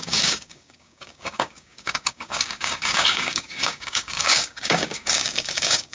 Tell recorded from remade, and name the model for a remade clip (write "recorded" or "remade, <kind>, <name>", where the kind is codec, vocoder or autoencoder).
remade, codec, DAC